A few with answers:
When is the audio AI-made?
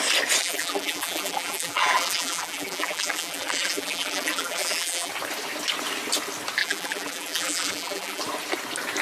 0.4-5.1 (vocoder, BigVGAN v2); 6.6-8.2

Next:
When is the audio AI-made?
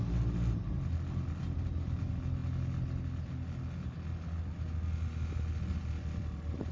none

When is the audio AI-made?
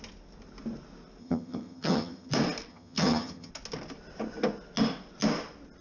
1.2-2.3 (vocoder, HiFi-GAN); 2.7-3.5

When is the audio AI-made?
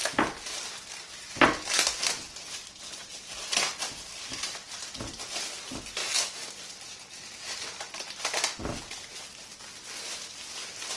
6.0-6.5 (autoencoder, DAC-VAE)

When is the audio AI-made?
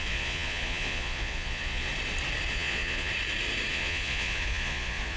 0.0-1.9 (vocoder, Vocos); 2.5-3.1; 3.7-5.2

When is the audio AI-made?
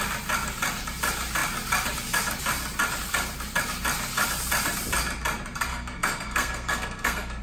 5.7-7.4 (codec, SNAC)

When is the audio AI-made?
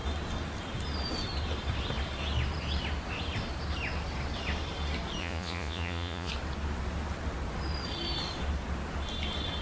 5.2-6.3 (vocoder, Vocos)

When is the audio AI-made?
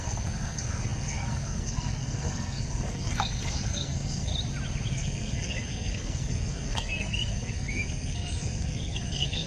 0.0-4.3 (codec, SNAC); 4.9-9.5